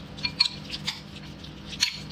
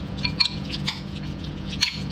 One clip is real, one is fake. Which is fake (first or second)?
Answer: second